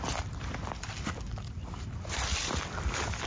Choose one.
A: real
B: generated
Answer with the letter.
A